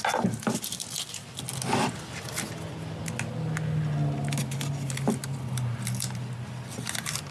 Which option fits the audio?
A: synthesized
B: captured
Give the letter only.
B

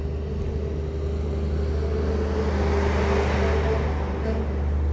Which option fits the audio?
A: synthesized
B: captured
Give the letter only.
B